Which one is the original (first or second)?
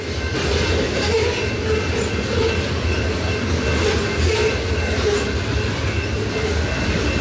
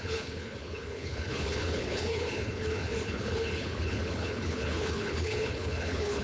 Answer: first